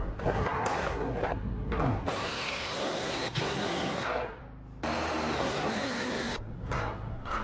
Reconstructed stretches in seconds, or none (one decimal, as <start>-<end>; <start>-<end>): 0.0-4.4; 5.4-7.4